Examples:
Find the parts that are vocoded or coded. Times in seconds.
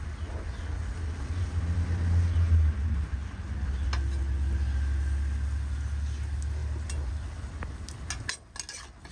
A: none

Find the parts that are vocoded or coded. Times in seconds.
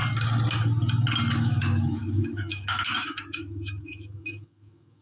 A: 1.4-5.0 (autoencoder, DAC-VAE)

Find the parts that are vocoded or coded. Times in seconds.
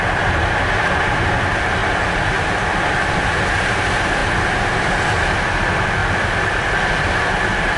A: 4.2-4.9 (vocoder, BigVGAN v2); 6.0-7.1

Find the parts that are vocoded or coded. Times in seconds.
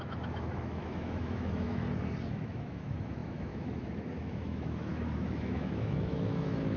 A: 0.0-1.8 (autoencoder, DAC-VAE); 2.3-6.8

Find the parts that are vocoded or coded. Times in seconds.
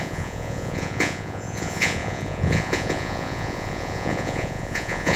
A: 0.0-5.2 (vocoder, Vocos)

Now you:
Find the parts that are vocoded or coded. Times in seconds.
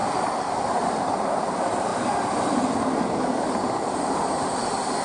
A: none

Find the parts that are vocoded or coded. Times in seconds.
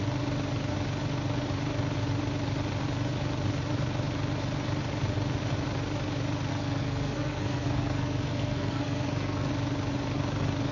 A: 6.5-9.5 (codec, SNAC)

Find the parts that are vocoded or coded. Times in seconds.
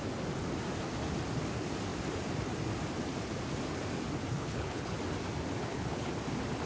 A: 4.3-4.9 (codec, HILCodec); 5.6-6.1